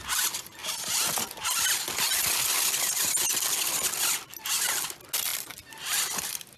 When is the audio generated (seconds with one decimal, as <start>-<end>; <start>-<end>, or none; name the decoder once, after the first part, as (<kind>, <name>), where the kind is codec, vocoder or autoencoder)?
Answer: 5.3-6.6 (vocoder, BigVGAN v2)